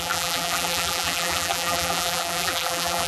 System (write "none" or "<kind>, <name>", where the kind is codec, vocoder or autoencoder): vocoder, BigVGAN v2